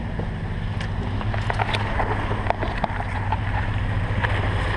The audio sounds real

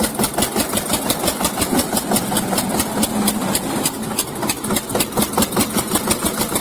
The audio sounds real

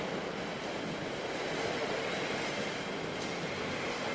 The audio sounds real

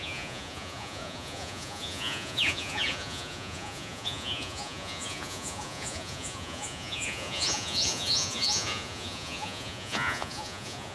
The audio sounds fake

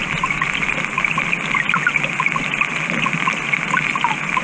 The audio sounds real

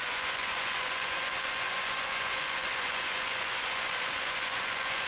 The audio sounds fake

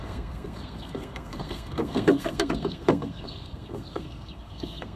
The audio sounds fake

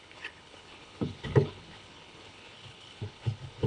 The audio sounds fake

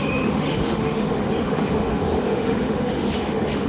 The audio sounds fake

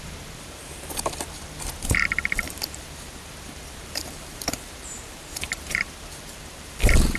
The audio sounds fake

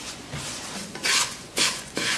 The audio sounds fake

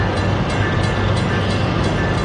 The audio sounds real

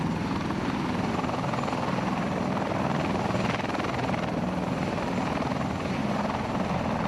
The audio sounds real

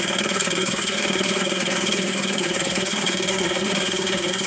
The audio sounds fake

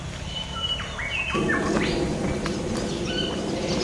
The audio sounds real